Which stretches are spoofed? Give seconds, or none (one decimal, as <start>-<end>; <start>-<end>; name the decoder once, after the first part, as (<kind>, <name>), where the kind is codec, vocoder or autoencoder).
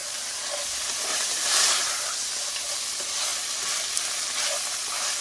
0.0-2.1 (vocoder, BigVGAN v2)